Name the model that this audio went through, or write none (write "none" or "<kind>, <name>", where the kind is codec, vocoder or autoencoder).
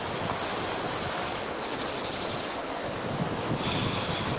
none